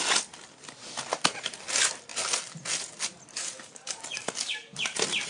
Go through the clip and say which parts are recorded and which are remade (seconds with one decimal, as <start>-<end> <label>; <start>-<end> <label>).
0.0-3.3 recorded; 3.3-4.8 remade; 4.8-5.3 recorded